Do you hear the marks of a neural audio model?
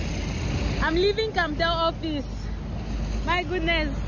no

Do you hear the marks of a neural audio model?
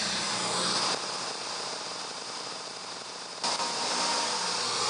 no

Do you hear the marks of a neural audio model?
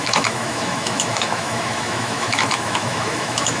yes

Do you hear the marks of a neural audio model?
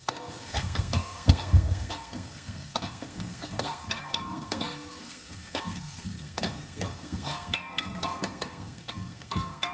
yes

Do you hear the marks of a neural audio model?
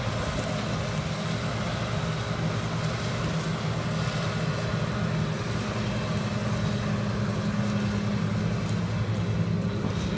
no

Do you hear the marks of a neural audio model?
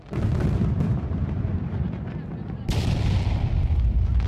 no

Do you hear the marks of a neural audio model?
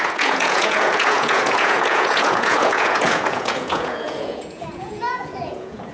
yes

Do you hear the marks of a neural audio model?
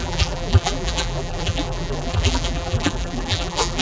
yes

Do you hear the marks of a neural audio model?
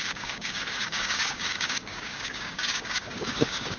yes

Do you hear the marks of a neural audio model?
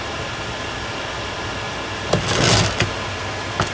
no